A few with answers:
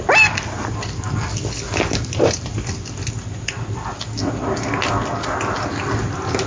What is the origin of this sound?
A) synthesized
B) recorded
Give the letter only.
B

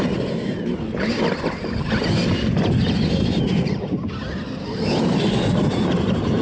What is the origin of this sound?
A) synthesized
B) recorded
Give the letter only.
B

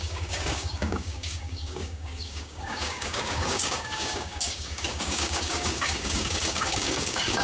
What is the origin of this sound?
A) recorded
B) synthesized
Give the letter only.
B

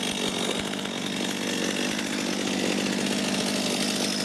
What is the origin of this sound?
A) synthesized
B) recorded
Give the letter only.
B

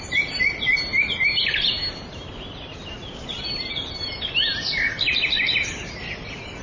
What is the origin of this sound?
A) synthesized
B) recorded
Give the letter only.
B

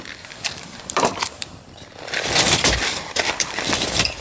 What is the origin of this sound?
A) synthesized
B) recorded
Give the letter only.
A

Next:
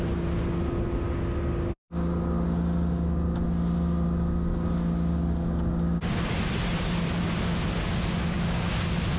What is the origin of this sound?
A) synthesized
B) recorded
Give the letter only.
B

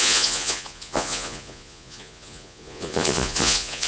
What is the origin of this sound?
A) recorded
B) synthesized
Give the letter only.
B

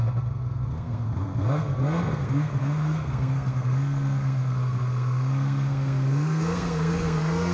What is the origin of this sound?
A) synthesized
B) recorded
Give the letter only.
A